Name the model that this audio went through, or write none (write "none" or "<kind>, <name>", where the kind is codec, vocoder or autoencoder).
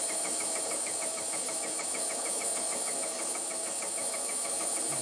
autoencoder, DAC-VAE